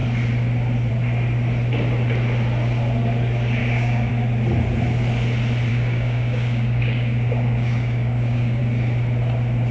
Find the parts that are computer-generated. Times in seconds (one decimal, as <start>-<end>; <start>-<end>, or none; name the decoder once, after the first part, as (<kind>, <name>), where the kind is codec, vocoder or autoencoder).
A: 3.6-4.1 (codec, DAC); 5.7-8.6